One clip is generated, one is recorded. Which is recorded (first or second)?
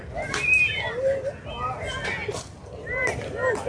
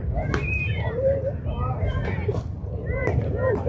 first